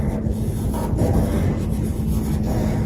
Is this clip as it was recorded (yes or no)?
yes